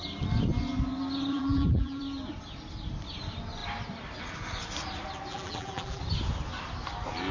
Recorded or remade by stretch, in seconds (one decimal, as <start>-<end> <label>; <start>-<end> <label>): 0.0-1.3 recorded; 1.3-2.0 remade; 2.0-5.3 recorded; 5.3-6.0 remade; 6.0-7.3 recorded